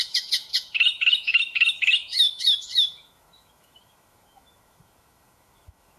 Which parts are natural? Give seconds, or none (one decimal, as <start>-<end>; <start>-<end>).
none